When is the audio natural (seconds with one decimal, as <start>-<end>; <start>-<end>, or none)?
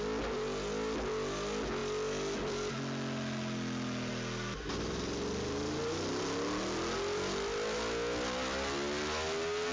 0.0-9.7